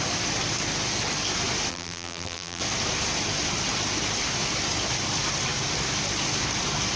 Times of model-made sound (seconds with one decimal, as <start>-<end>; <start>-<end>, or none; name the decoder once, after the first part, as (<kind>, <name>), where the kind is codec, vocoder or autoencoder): 1.7-2.6 (vocoder, BigVGAN v2)